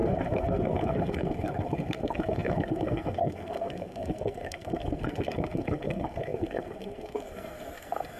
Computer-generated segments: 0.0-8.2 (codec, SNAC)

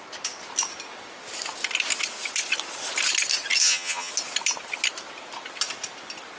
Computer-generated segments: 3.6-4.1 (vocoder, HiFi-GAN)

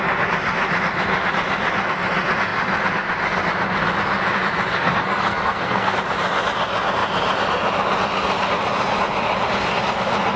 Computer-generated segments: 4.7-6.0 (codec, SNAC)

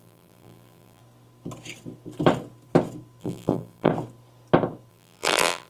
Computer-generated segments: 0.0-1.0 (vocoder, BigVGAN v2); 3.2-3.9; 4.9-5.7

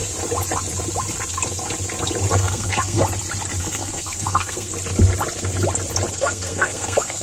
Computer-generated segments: 2.3-3.0 (codec, SNAC); 3.6-4.7; 6.1-7.2